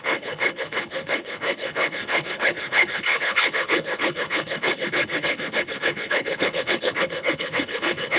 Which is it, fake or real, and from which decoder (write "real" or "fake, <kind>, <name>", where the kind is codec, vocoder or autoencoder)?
fake, codec, HILCodec